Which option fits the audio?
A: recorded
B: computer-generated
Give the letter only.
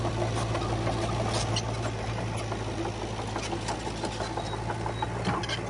A